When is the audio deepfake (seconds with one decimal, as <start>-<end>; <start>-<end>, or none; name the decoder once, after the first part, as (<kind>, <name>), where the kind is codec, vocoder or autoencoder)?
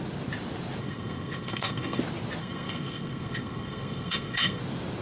0.8-2.0 (codec, SNAC); 2.4-4.6